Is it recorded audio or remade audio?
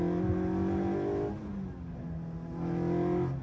recorded